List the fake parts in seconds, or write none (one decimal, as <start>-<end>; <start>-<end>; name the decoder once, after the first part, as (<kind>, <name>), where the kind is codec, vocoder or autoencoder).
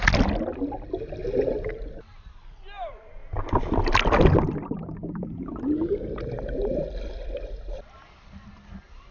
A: none